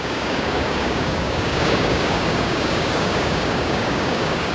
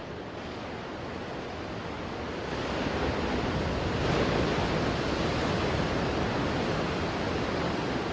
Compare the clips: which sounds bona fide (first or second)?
second